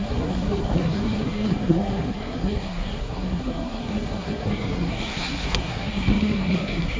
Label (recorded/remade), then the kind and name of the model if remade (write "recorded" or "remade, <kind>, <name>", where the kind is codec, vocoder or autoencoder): remade, codec, SNAC